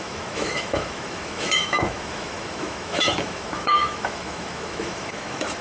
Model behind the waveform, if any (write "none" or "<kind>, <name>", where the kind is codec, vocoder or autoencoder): autoencoder, DAC-VAE